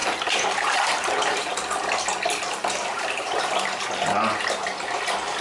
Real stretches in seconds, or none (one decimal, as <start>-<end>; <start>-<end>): 1.5-2.6; 3.8-5.4